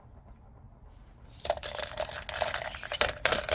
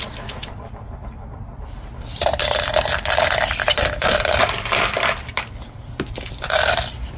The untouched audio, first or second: first